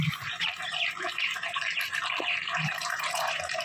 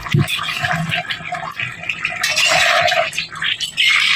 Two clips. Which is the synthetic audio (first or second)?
first